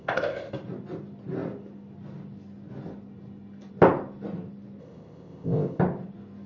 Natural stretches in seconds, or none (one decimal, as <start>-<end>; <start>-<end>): 0.5-4.8; 5.8-6.5